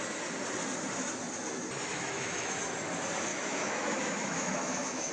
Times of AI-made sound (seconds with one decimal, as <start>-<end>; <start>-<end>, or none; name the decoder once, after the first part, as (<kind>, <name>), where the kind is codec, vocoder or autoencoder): 1.9-2.6 (autoencoder, DAC-VAE); 3.3-5.1